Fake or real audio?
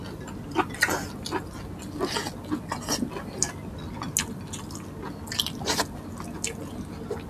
real